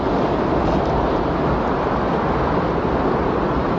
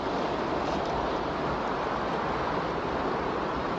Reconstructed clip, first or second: second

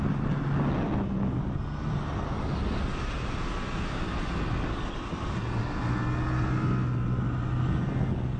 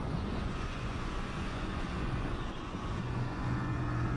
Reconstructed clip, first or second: second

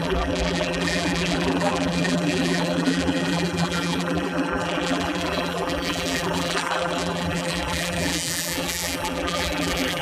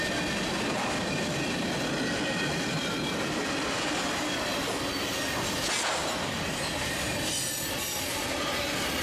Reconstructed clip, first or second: first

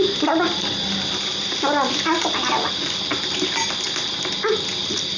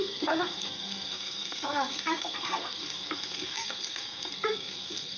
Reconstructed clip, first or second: second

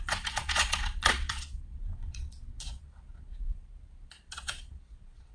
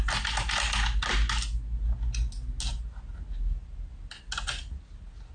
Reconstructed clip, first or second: first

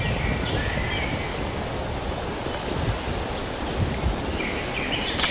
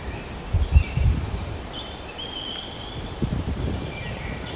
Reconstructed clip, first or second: second